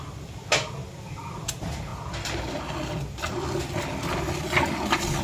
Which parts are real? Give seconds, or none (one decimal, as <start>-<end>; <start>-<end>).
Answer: 0.0-5.2